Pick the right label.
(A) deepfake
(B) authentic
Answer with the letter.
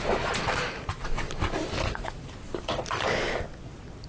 B